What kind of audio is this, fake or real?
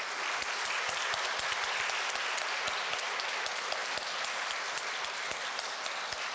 real